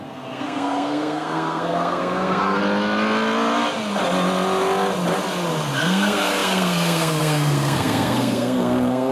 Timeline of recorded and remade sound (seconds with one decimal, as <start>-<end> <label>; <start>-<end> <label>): 0.0-2.6 remade; 2.6-5.8 recorded; 5.8-9.1 remade